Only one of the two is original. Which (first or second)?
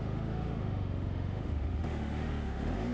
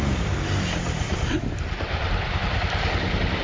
second